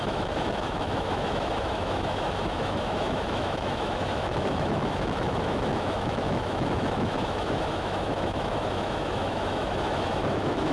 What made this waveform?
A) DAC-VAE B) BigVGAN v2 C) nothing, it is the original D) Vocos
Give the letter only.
A